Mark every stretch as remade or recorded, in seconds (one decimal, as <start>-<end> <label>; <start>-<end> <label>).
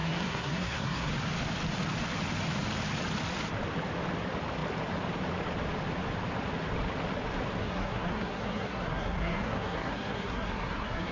0.0-1.1 remade; 1.1-7.6 recorded; 7.6-11.1 remade